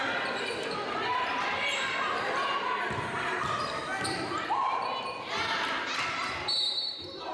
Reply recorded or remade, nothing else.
remade